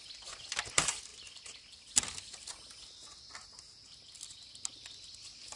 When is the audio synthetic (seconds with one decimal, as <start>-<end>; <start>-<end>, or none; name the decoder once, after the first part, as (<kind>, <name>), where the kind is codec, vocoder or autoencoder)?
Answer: none